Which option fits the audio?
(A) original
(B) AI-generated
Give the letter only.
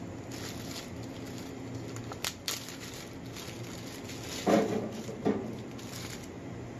A